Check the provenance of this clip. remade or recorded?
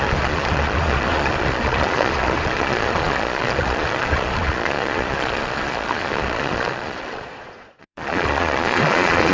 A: remade